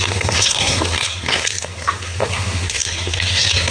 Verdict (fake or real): fake